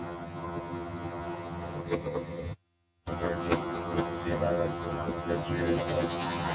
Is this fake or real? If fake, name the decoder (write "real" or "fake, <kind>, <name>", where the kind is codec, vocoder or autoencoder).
fake, vocoder, HiFi-GAN